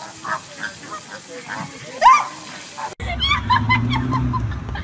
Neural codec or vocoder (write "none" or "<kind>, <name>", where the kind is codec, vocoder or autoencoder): none